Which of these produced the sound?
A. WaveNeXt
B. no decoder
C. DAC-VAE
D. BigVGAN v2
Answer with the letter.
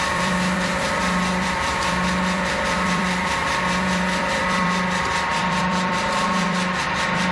D